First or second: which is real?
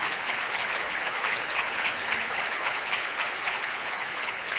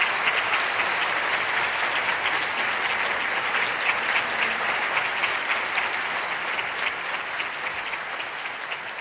second